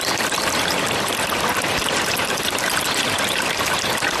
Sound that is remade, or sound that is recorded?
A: recorded